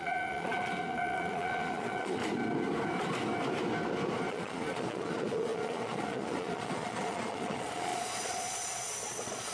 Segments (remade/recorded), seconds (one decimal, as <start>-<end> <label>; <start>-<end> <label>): 0.0-2.2 remade; 2.2-4.3 recorded; 4.3-9.5 remade